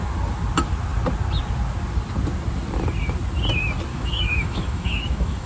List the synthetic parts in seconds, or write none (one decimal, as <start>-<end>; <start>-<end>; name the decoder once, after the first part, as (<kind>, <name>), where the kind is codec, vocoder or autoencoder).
3.9-5.5 (autoencoder, DAC-VAE)